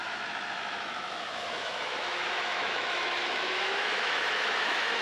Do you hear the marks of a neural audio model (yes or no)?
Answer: yes